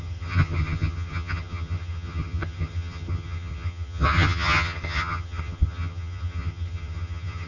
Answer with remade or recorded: remade